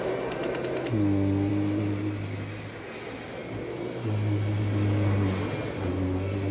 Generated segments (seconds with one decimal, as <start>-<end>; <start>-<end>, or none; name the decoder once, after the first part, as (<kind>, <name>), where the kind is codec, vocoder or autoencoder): none